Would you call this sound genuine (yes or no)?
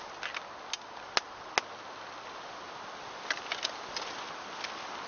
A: yes